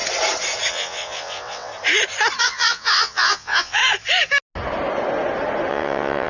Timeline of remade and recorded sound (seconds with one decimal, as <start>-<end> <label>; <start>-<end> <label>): 0.0-0.7 recorded; 0.7-1.7 remade; 1.7-2.4 recorded; 2.4-3.8 remade; 3.8-5.7 recorded; 5.7-6.3 remade